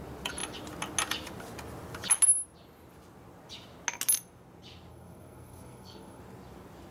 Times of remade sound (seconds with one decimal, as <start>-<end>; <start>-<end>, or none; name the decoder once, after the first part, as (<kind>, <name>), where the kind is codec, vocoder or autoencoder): 4.9-6.2 (codec, SNAC)